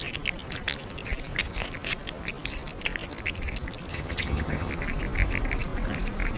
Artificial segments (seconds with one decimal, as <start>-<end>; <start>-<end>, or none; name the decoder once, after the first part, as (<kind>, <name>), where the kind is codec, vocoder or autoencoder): 3.9-4.7 (vocoder, HiFi-GAN)

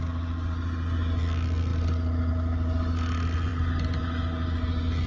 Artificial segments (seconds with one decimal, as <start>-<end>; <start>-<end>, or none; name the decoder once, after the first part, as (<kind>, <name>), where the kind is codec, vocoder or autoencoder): none

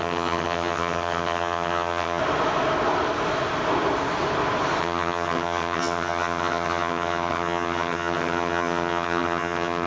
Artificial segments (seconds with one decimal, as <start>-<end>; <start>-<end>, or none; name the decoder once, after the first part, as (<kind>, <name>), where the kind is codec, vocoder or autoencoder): 0.0-2.2 (vocoder, HiFi-GAN); 4.8-9.9

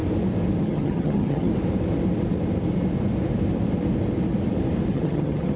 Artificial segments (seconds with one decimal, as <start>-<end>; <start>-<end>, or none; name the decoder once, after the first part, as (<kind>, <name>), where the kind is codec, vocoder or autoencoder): 0.6-1.5 (vocoder, HiFi-GAN); 4.9-5.6

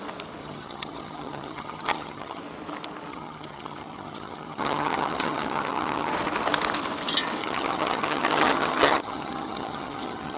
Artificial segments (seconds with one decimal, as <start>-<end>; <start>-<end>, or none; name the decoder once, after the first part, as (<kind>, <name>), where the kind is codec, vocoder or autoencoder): 0.4-2.4 (vocoder, HiFi-GAN); 3.1-6.1; 7.4-10.4

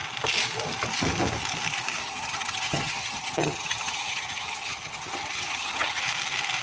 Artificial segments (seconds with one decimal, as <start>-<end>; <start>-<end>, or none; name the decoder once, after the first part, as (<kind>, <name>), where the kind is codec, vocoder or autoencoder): 2.0-6.0 (vocoder, HiFi-GAN)

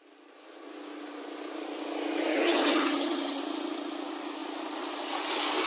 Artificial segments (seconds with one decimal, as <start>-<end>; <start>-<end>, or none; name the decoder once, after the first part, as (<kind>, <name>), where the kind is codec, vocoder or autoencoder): 2.3-3.4 (vocoder, HiFi-GAN)

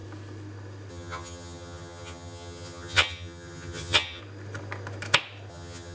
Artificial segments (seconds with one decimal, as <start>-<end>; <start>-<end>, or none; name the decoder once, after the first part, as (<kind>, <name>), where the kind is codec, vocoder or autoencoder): 0.9-4.2 (vocoder, HiFi-GAN); 5.5-5.9